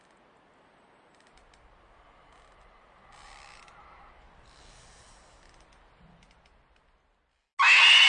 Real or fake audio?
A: real